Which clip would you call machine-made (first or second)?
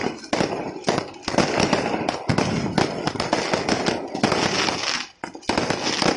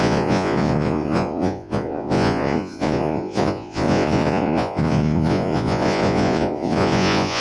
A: second